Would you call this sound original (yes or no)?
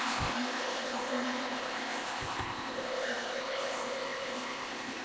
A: no